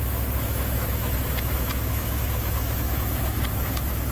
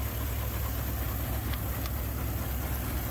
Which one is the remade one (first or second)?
first